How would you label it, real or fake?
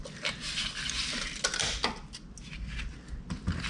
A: real